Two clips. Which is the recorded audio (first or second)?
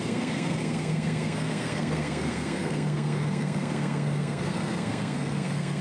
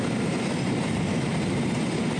second